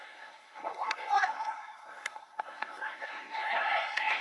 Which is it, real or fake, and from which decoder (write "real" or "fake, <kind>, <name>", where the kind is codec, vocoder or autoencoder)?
fake, codec, SNAC